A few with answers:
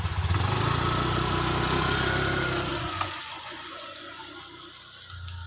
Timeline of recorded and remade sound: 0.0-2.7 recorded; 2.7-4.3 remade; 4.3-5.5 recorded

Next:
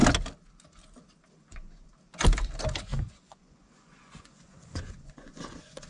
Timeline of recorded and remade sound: 0.0-1.3 recorded; 1.3-1.9 remade; 1.9-2.8 recorded; 2.8-5.9 remade

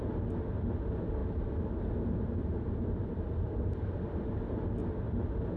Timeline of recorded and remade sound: 0.0-1.2 recorded; 1.2-3.2 remade; 3.2-4.8 recorded; 4.8-5.6 remade

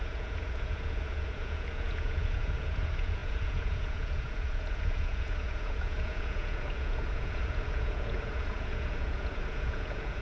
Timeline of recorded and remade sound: 0.0-10.2 remade

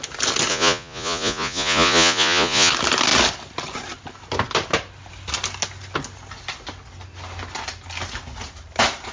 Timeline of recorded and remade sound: 0.0-0.5 recorded; 0.5-2.7 remade; 2.7-9.1 recorded